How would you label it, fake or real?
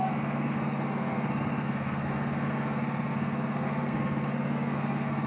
fake